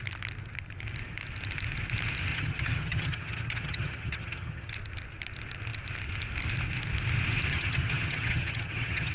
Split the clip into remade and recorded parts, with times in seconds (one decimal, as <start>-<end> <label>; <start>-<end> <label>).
0.0-2.3 recorded; 2.3-4.7 remade; 4.7-7.5 recorded; 7.5-9.1 remade